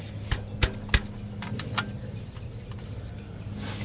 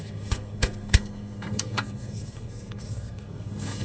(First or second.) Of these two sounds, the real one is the first